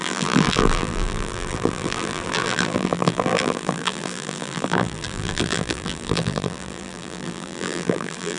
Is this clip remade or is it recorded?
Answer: remade